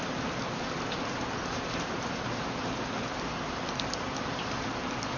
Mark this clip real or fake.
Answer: real